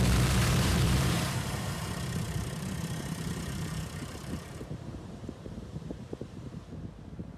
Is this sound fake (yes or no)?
yes